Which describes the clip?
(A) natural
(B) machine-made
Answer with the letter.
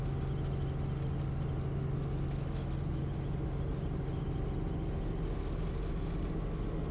A